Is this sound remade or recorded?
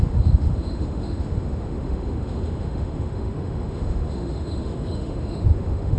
remade